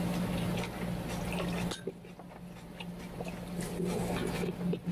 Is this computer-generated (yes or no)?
no